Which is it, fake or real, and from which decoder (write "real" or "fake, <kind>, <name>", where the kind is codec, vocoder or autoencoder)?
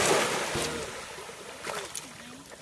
real